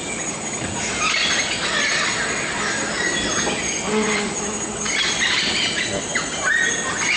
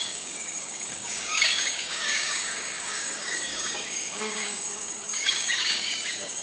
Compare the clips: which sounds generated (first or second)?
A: second